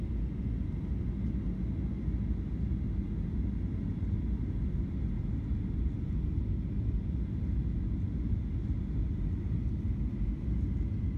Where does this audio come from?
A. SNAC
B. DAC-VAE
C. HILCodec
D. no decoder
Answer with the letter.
D